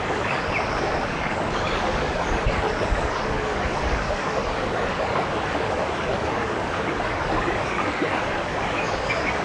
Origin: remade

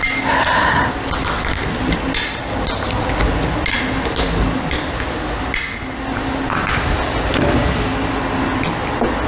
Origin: recorded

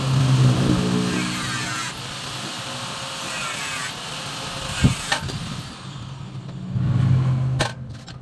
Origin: recorded